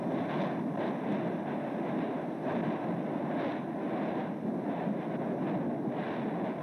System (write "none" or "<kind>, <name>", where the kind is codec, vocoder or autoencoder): none